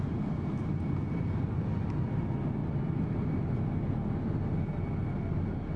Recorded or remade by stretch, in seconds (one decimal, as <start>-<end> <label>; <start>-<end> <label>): 0.0-5.8 recorded